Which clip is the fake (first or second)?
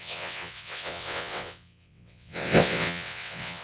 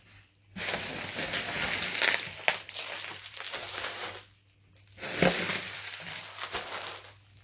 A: first